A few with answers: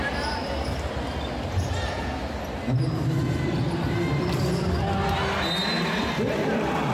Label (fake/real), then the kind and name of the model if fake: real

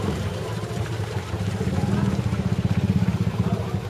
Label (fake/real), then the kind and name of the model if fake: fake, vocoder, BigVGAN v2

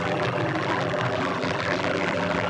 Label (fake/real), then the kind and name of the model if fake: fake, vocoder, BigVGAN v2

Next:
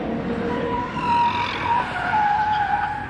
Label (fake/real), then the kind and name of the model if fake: real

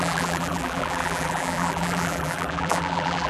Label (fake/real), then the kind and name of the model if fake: fake, vocoder, BigVGAN v2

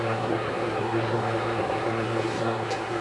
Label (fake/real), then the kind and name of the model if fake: fake, codec, SNAC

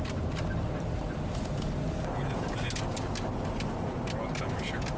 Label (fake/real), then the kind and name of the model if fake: real